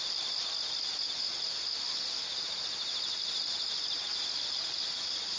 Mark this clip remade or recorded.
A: recorded